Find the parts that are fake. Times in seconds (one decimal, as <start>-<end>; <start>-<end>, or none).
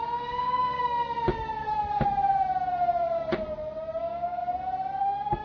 0.0-0.8; 4.0-4.4; 5.0-5.4